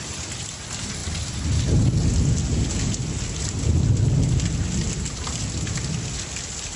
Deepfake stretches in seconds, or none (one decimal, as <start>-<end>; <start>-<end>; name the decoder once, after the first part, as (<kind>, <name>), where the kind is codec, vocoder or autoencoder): none